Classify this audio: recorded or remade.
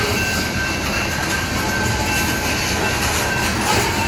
recorded